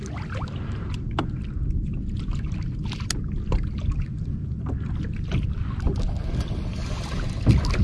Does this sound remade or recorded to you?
recorded